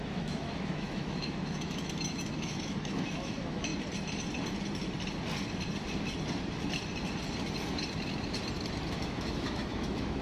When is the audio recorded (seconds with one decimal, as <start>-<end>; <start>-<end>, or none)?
3.7-8.9